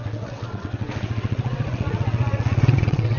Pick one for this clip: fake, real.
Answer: fake